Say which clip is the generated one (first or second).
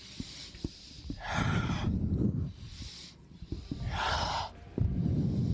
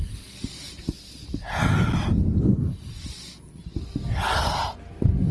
first